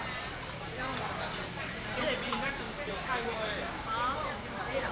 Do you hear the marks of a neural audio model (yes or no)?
no